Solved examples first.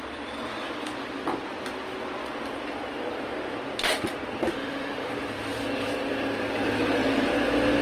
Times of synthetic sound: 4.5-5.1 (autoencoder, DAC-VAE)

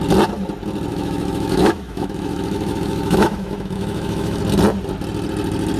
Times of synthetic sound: 0.9-4.4 (autoencoder, DAC-VAE)

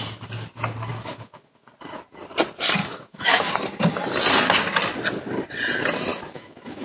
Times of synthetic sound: 0.9-1.7 (autoencoder, DAC-VAE); 2.8-3.5; 6.1-6.8

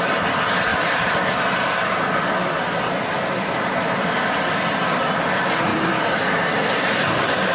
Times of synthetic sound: 0.7-5.2 (vocoder, BigVGAN v2); 5.7-7.5

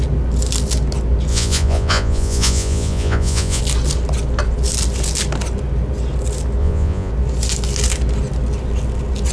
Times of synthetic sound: 1.3-3.6 (vocoder, Vocos); 6.6-7.1

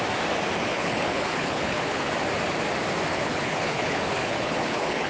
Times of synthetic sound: 0.7-2.1 (codec, HILCodec); 3.1-5.1

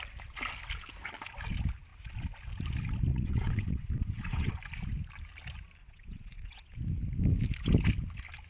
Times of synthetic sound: 3.1-4.5 (vocoder, WaveNeXt); 5.8-6.7

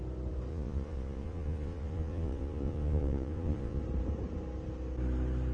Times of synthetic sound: 0.5-3.8 (vocoder, Vocos)